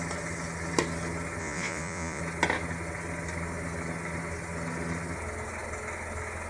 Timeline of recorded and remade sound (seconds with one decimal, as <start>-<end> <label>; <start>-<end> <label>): 0.0-1.4 recorded; 1.4-2.2 remade; 2.2-6.5 recorded